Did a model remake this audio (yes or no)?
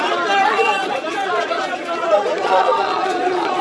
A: yes